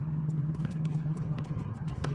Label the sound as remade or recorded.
remade